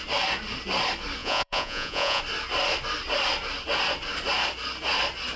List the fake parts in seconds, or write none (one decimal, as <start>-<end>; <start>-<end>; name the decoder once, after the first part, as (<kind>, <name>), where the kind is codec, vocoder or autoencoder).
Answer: 1.2-2.2 (vocoder, Vocos)